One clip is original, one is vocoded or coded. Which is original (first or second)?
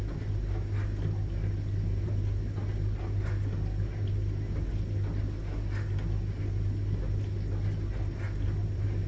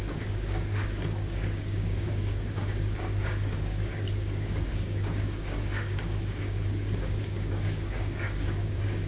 first